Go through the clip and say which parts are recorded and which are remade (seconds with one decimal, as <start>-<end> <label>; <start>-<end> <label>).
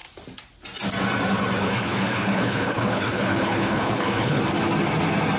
0.0-1.6 recorded; 1.6-4.4 remade; 4.4-5.4 recorded